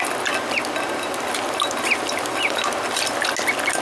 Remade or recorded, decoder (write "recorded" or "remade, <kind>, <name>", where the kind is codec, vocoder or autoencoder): recorded